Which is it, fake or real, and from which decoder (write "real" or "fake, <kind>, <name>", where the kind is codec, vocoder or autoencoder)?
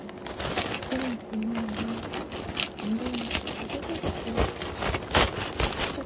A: real